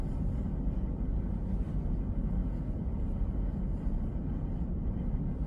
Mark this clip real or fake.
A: real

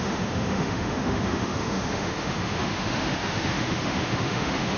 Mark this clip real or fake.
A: fake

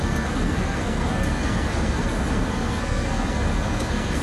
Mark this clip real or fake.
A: fake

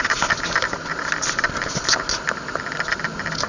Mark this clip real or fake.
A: real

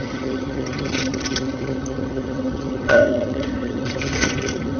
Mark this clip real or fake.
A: fake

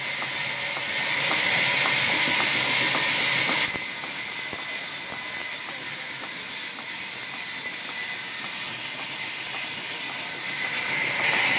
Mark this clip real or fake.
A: real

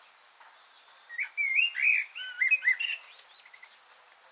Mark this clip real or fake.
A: real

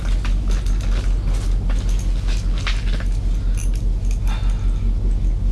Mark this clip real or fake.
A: real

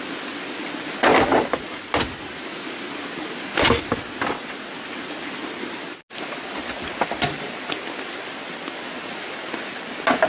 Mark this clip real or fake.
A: real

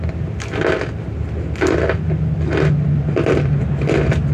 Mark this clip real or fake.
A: real